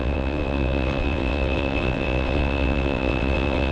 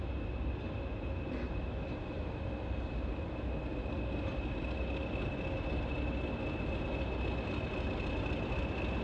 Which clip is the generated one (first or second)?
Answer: first